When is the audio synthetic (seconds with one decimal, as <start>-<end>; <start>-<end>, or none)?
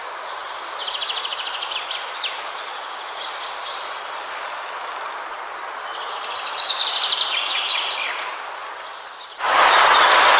0.4-3.5; 8.6-9.8